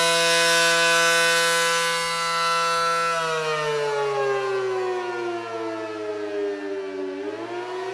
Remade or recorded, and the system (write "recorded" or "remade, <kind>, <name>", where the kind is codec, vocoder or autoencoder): recorded